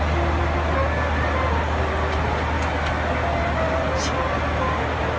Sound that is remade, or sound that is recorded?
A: recorded